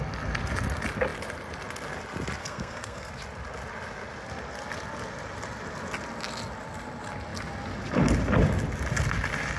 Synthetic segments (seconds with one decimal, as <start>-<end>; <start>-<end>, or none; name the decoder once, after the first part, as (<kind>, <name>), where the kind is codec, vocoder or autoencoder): 2.4-3.1 (codec, SNAC)